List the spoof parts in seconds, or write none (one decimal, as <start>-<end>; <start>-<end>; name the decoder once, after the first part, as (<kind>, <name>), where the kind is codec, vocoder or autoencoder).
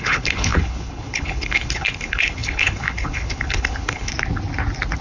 0.0-4.1 (codec, HILCodec)